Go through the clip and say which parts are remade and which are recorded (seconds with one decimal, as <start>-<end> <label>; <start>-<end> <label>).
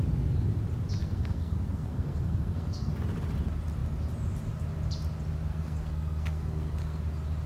0.0-1.0 recorded; 1.0-2.9 remade; 2.9-5.5 recorded; 5.5-7.0 remade; 7.0-7.5 recorded